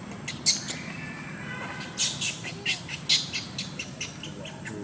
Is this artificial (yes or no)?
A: no